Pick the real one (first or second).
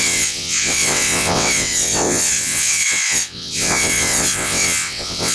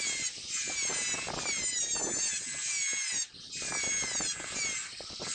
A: second